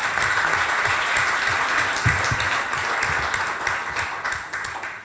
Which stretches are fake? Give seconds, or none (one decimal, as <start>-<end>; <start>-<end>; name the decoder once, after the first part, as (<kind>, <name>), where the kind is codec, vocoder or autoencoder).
none